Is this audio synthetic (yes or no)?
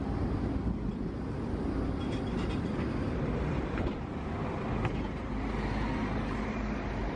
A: no